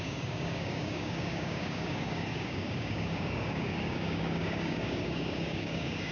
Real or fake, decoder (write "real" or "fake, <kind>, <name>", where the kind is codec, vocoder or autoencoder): fake, codec, DAC